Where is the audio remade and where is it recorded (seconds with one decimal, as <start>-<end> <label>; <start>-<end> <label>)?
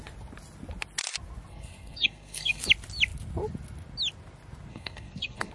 0.0-1.5 recorded; 1.5-2.6 remade; 2.6-4.7 recorded; 4.7-5.5 remade